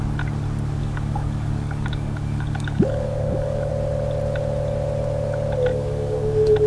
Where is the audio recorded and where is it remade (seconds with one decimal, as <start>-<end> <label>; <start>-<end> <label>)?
0.0-0.8 recorded; 0.8-3.7 remade; 3.7-5.7 recorded; 5.7-6.7 remade